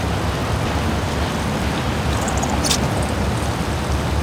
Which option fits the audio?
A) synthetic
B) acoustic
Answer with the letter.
B